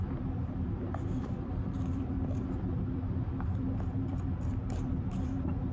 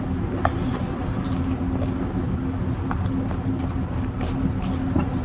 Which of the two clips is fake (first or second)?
first